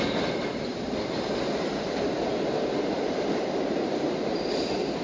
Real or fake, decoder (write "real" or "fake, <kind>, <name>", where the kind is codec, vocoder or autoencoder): fake, vocoder, BigVGAN v2